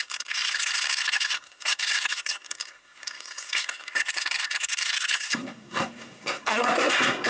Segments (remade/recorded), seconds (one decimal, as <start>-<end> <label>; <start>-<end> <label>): 0.0-7.3 remade